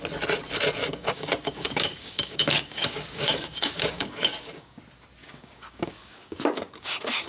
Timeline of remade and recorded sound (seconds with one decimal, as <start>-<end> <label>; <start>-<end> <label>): 0.0-0.8 recorded; 0.8-4.8 remade; 4.8-5.2 recorded; 5.2-7.3 remade